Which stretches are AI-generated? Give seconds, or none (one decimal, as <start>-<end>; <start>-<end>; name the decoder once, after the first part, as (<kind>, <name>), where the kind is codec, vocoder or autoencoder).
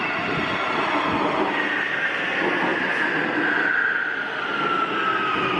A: none